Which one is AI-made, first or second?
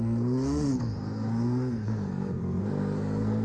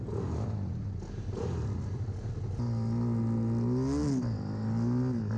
first